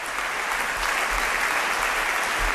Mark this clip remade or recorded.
recorded